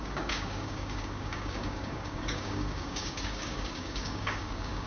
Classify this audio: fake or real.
fake